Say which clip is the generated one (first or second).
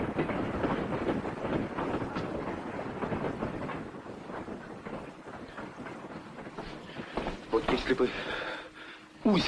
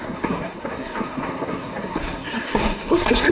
second